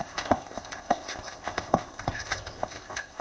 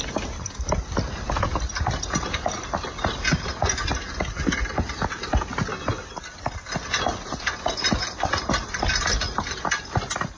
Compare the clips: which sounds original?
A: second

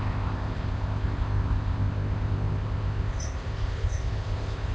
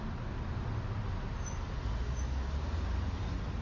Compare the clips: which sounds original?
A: second